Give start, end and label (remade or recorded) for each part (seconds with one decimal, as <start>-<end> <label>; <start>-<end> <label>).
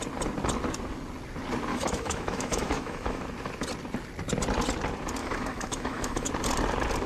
0.0-1.7 recorded; 1.7-3.2 remade; 3.2-5.2 recorded; 5.2-6.3 remade; 6.3-7.1 recorded